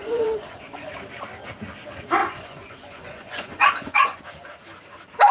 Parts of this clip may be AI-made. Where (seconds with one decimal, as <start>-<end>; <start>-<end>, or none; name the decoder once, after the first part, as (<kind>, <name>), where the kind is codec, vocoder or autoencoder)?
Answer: 0.0-0.9 (vocoder, Vocos); 2.2-4.2